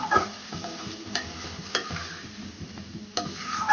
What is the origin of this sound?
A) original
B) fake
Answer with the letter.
A